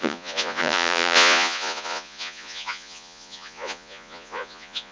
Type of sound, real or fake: fake